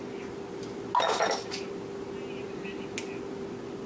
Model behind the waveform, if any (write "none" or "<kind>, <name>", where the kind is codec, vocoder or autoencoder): none